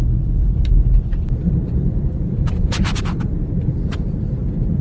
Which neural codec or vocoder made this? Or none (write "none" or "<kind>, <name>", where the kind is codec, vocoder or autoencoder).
vocoder, BigVGAN v2